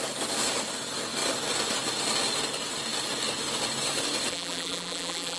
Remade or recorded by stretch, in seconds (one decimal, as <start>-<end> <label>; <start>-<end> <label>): 0.0-4.3 recorded; 4.3-5.4 remade